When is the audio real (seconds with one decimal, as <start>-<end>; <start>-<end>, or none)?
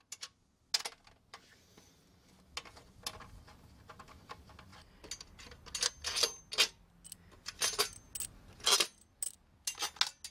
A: 0.0-10.3